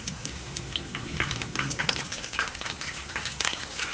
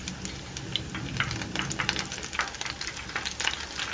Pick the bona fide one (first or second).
second